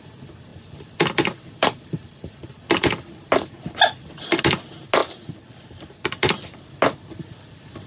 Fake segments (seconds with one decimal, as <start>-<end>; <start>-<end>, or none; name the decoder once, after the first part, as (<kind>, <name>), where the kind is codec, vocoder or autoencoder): 0.5-4.4 (vocoder, BigVGAN v2)